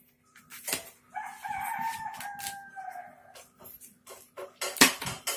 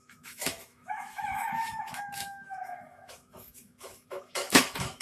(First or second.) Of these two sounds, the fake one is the second